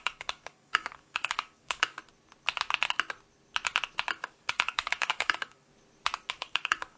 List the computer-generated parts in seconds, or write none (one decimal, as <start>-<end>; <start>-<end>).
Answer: 0.0-2.0; 4.1-5.7; 6.3-7.0